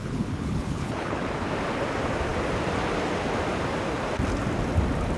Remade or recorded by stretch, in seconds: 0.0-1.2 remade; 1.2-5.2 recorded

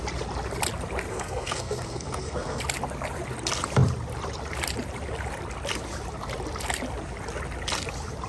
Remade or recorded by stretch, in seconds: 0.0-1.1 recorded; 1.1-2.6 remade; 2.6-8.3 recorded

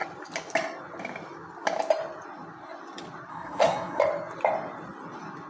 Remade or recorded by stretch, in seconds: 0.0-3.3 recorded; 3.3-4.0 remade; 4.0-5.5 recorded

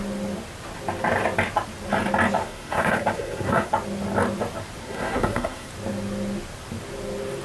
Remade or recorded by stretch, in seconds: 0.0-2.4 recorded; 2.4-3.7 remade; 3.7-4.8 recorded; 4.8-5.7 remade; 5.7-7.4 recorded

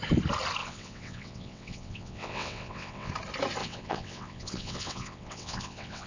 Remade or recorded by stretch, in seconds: 0.0-0.6 recorded; 0.6-3.1 remade; 3.1-3.6 recorded; 3.6-6.1 remade

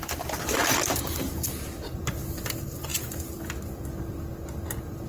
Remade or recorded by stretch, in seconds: 0.0-1.8 remade; 1.8-5.1 recorded

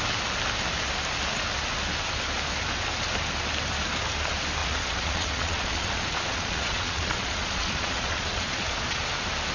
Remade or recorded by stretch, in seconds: 0.0-4.6 recorded; 4.6-9.0 remade; 9.0-9.5 recorded